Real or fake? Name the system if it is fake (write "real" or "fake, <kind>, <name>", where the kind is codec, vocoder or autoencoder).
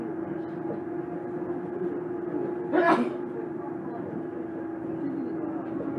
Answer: real